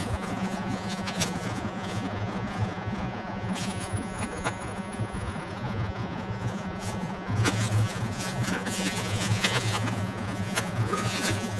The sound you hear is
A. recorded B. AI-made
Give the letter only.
B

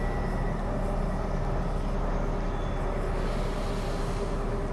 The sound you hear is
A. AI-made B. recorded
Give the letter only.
B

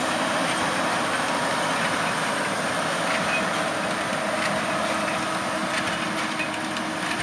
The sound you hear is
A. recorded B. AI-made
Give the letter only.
A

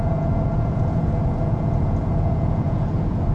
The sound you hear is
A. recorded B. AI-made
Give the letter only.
B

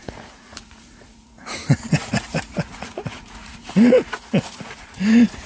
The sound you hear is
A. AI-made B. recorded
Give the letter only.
A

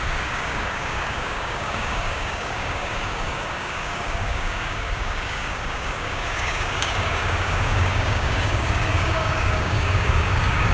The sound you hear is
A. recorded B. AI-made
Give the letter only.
B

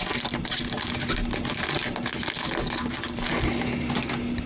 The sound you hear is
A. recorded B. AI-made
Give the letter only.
A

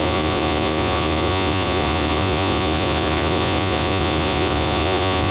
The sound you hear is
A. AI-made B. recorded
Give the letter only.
A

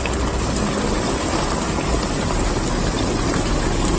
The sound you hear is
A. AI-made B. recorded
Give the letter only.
B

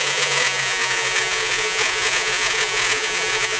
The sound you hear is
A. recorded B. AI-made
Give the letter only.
B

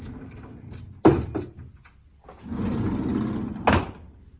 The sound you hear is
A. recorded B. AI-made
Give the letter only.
A